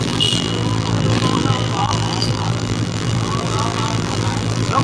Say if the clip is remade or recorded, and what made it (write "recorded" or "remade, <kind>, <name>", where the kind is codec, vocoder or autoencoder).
remade, vocoder, BigVGAN v2